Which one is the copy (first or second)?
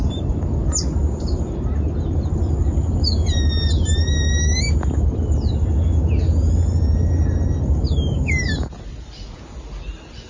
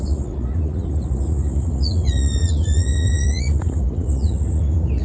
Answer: second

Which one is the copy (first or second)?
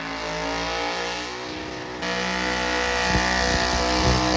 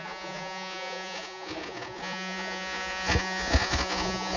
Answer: second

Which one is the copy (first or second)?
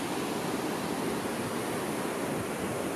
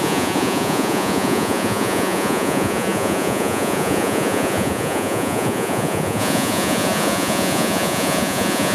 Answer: second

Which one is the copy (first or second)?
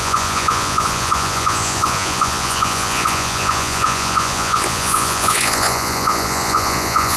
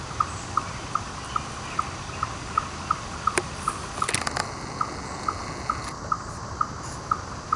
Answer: first